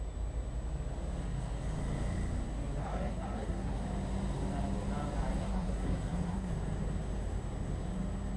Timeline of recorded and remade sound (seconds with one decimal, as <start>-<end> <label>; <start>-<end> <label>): 0.0-2.8 recorded; 2.8-3.8 remade; 3.8-5.4 recorded; 5.4-6.5 remade; 6.5-8.4 recorded